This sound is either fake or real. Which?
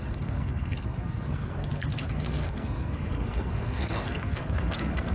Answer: fake